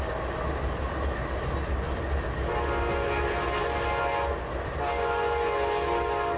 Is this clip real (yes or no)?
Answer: yes